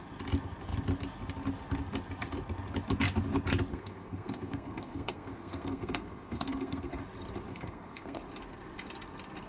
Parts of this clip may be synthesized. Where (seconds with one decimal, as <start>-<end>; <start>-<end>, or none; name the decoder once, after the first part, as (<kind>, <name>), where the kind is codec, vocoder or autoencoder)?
3.7-6.9 (codec, SNAC); 7.5-8.2